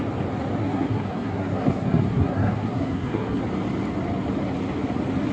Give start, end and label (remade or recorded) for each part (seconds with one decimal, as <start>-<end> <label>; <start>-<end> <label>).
0.0-0.6 recorded; 0.6-3.4 remade; 3.4-5.3 recorded